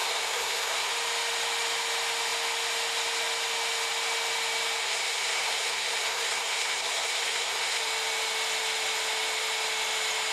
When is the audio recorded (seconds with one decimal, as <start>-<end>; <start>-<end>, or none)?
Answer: 0.9-4.8; 7.8-10.3